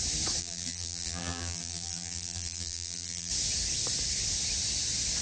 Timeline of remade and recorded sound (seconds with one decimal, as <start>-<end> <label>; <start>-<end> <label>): 0.0-0.4 recorded; 0.4-3.3 remade; 3.3-5.2 recorded